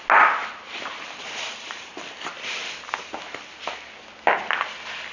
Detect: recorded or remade recorded